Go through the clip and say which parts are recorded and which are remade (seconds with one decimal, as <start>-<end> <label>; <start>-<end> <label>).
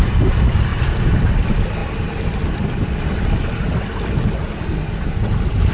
0.0-5.7 recorded